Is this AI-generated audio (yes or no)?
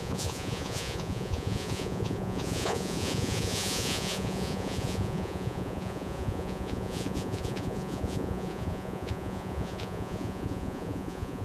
yes